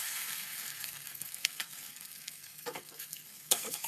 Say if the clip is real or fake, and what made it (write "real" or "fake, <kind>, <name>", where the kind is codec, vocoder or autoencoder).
fake, codec, SNAC